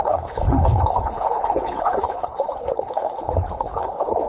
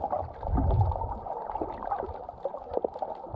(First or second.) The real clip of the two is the second